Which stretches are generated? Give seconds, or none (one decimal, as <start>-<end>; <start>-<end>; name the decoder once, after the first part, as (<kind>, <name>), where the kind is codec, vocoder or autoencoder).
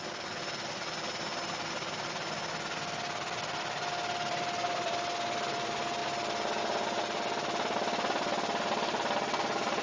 none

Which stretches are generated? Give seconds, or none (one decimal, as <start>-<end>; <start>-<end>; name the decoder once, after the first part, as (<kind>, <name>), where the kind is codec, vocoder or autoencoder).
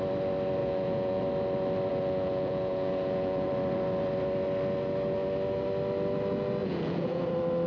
0.6-1.2 (vocoder, Vocos); 1.9-3.5; 6.6-7.3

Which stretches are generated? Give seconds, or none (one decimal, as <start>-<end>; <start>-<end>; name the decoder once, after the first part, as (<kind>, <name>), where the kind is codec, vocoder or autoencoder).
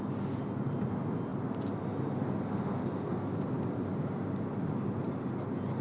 none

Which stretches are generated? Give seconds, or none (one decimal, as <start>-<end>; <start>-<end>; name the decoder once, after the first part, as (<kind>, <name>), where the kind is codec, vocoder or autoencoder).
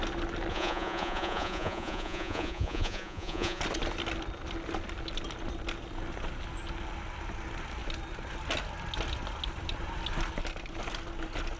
0.5-3.6 (vocoder, Vocos)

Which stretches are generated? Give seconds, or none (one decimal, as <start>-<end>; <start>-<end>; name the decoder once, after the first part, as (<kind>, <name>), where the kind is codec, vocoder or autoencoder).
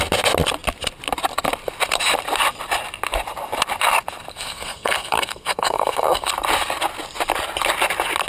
4.3-6.3 (codec, SNAC)